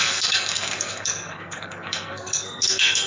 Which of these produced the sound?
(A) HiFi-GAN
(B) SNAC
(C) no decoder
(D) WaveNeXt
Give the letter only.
B